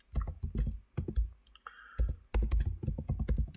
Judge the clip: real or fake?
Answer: real